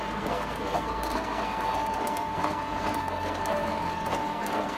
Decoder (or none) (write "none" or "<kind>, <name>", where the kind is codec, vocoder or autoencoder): codec, SNAC